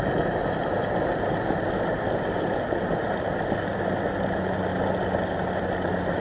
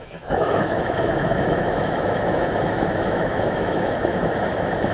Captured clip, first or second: first